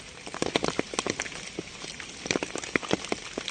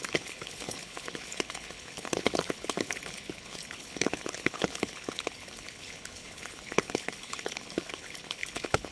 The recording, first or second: first